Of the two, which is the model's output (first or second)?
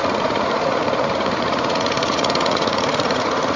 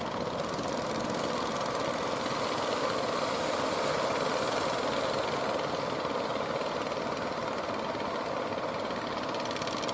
first